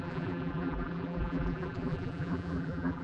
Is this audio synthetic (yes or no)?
yes